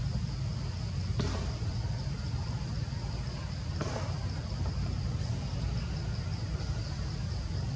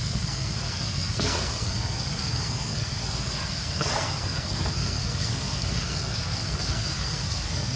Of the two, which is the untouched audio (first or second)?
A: first